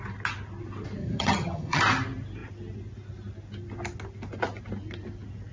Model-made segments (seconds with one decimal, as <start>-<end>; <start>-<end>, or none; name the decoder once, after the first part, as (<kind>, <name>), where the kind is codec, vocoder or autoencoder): 1.0-1.8 (vocoder, HiFi-GAN)